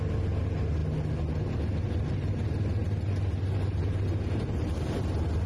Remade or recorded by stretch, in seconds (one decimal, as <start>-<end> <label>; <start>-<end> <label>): 0.0-5.5 recorded